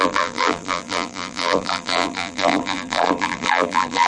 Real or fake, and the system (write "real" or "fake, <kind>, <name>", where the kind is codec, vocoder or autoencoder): fake, vocoder, BigVGAN v2